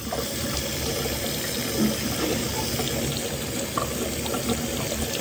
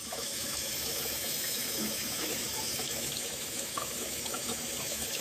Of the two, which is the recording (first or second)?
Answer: first